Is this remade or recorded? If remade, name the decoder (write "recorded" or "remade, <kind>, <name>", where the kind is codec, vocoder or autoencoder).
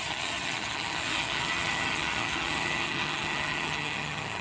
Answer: remade, vocoder, HiFi-GAN